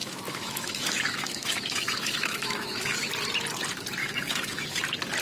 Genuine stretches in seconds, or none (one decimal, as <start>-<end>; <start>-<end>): 3.1-4.0; 4.8-5.2